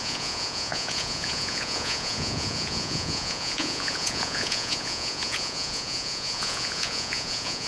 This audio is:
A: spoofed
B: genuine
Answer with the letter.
A